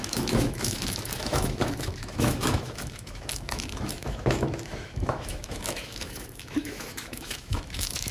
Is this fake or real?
fake